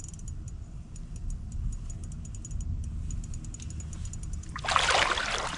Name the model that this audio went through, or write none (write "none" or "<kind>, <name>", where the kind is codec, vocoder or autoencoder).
none